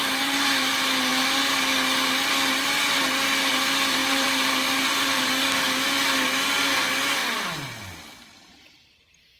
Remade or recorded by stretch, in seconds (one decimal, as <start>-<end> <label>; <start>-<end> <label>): 0.0-4.0 recorded; 4.0-5.3 remade; 5.3-7.2 recorded; 7.2-7.8 remade; 7.8-9.4 recorded